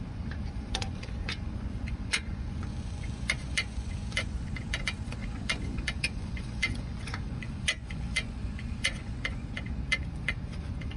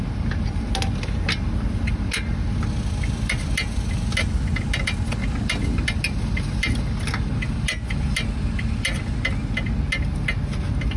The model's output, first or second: first